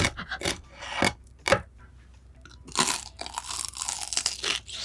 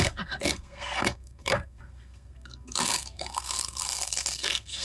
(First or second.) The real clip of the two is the first